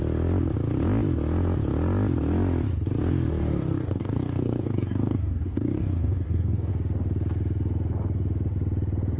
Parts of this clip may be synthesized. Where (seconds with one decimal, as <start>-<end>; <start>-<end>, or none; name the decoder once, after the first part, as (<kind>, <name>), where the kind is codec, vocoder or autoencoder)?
3.4-6.7 (codec, DAC)